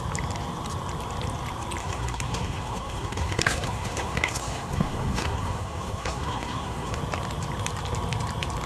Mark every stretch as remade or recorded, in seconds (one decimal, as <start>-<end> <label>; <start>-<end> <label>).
0.0-1.8 recorded; 1.8-7.0 remade; 7.0-8.7 recorded